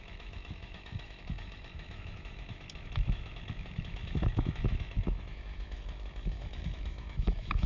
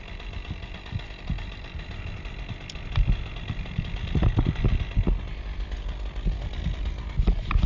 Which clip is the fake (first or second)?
first